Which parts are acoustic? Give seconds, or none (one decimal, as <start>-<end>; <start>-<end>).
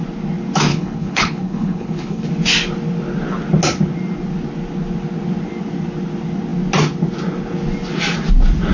0.0-0.7; 2.3-8.7